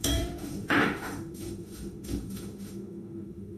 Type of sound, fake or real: fake